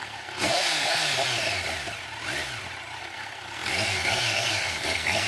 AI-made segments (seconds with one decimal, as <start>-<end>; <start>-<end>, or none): 0.0-1.0; 3.0-5.3